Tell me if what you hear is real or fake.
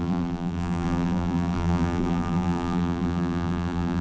fake